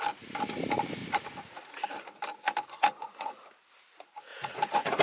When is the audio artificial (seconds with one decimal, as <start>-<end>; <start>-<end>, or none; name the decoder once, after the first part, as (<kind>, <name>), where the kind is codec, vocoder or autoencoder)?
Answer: 1.0-2.2 (vocoder, Vocos); 3.0-3.5; 4.3-5.0